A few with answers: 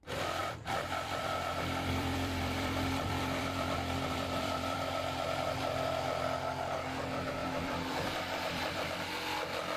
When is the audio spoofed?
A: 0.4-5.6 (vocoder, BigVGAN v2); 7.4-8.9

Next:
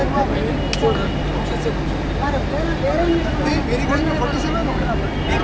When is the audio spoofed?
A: none

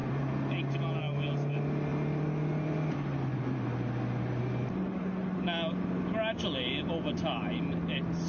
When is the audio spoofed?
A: none

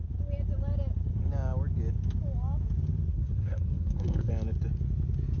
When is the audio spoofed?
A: 3.1-4.3 (codec, SNAC)

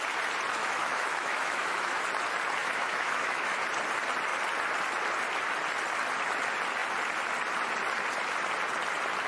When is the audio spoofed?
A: 0.6-2.0 (autoencoder, DAC-VAE); 2.6-3.6